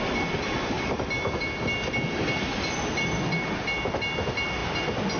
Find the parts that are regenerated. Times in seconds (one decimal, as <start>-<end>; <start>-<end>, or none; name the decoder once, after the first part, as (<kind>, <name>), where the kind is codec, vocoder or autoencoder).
none